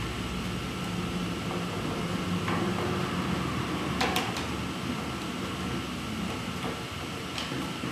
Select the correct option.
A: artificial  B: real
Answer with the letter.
B